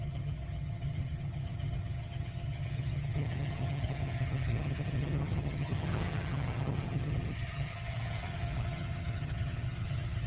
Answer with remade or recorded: remade